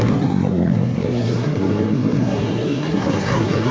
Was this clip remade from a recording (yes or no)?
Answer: yes